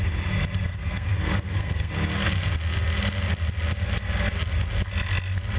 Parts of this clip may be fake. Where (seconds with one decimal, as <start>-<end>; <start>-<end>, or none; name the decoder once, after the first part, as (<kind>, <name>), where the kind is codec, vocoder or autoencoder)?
0.7-1.9 (codec, SNAC)